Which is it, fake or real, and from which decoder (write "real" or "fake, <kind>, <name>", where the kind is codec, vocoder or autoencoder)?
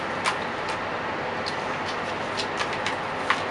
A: real